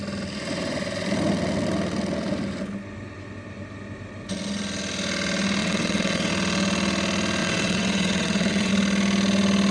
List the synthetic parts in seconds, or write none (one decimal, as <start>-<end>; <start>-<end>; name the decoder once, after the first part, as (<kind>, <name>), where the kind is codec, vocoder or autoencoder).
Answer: 5.6-6.3 (vocoder, WaveNeXt); 7.4-8.7